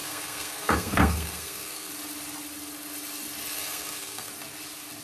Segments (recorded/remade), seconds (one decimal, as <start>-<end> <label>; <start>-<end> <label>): 0.0-1.9 remade; 1.9-3.4 recorded; 3.4-4.3 remade; 4.3-5.0 recorded